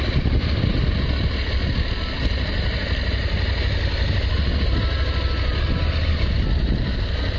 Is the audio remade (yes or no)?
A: no